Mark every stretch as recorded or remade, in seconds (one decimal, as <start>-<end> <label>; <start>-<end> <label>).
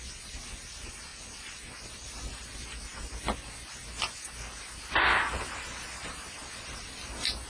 0.0-7.5 recorded